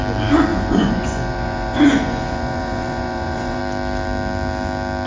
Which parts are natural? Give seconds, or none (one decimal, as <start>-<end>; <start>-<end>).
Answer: 0.0-0.5; 3.6-5.1